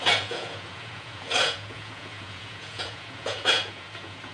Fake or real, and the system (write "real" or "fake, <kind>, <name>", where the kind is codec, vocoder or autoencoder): fake, vocoder, Vocos